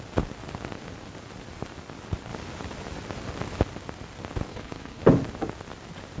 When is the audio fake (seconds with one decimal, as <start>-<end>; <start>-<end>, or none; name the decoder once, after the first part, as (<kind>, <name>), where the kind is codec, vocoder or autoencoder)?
4.5-5.0 (codec, HILCodec)